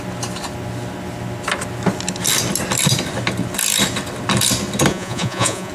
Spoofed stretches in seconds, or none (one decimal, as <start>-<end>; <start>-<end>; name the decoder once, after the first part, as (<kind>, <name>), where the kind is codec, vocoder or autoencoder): 4.9-5.7 (vocoder, Vocos)